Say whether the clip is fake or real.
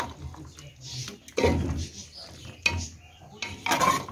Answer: real